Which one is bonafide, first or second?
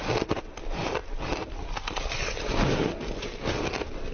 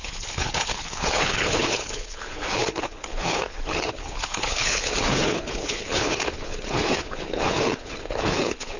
first